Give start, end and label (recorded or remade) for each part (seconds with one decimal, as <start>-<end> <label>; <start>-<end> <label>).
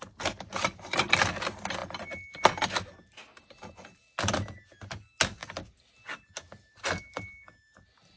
0.0-8.2 recorded